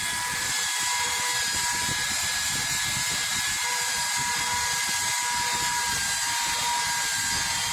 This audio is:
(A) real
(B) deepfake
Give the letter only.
A